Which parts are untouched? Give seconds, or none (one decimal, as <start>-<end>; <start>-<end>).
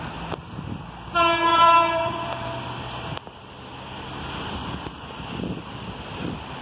0.0-1.5; 5.5-6.6